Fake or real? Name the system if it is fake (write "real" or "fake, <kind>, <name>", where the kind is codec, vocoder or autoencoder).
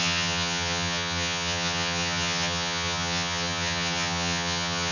fake, vocoder, HiFi-GAN